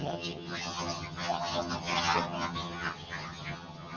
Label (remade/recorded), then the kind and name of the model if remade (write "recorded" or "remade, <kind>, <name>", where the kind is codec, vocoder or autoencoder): remade, vocoder, HiFi-GAN